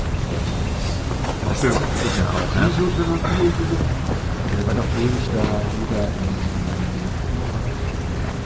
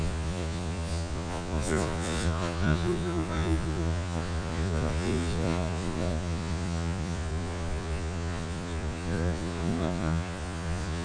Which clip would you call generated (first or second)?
second